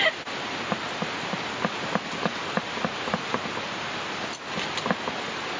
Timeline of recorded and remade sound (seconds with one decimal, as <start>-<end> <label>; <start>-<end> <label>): 0.0-5.6 recorded